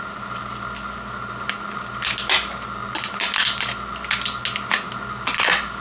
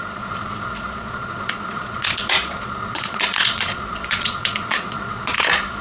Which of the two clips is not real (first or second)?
second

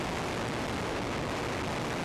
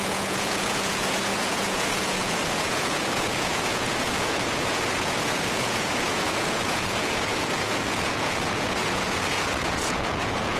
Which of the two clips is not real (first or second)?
second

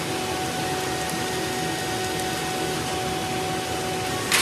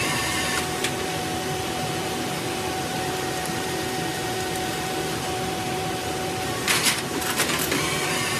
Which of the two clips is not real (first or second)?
second